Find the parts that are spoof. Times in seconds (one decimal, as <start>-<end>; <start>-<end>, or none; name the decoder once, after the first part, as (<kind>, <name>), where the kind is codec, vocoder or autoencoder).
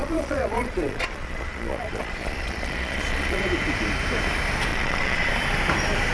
0.0-3.4 (vocoder, Vocos); 4.7-5.3